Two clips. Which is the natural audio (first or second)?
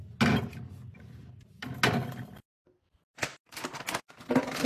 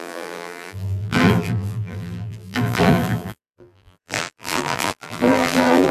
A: first